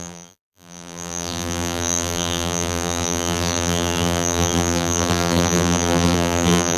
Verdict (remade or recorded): remade